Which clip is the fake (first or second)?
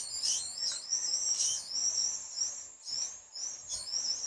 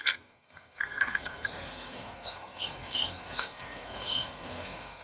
second